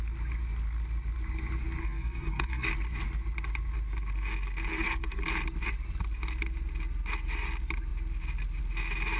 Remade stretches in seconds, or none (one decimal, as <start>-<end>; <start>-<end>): 1.8-2.7; 4.7-5.2